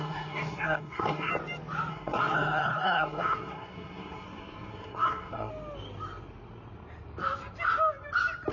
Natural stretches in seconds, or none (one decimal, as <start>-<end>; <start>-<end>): 1.3-1.9; 5.5-8.5